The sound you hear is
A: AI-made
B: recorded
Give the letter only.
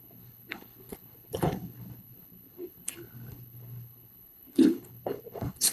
A